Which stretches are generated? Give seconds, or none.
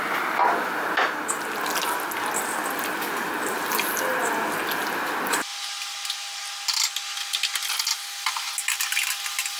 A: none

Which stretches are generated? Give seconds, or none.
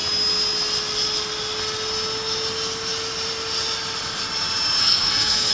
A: 4.8-5.5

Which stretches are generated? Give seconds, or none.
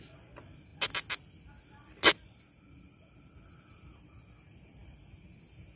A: none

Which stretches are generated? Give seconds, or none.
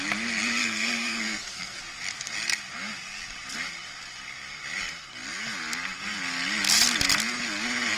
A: 0.6-1.8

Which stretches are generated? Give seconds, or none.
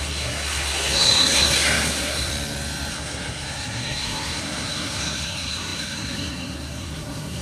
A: 0.0-2.3; 2.9-7.4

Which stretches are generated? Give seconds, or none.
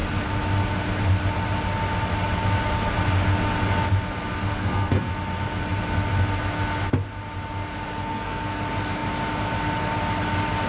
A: 4.5-5.1; 8.0-8.6